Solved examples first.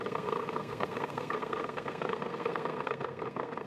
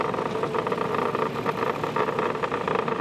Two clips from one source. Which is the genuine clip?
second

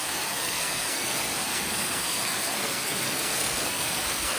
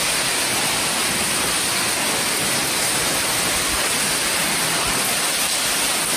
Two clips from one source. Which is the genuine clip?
second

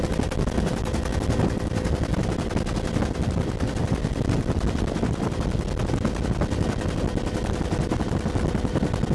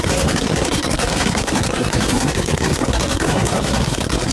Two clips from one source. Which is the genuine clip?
first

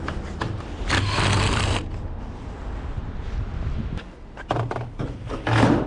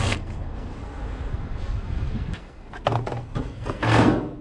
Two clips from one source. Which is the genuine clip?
first